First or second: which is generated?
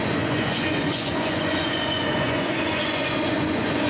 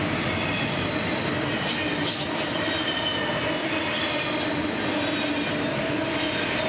first